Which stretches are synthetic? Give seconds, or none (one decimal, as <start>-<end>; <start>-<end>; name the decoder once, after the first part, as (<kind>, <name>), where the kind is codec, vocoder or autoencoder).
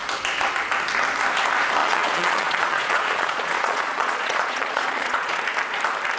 1.8-5.4 (vocoder, Vocos)